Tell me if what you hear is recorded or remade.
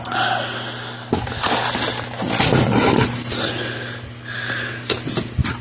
recorded